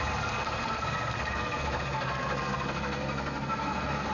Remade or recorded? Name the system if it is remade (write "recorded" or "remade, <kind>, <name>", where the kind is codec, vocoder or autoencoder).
remade, codec, SNAC